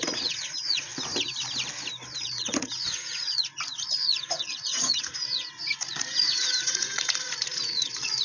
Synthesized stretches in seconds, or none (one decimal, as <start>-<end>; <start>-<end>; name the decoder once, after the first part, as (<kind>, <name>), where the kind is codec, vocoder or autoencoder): 0.0-0.9 (vocoder, Vocos); 2.2-8.2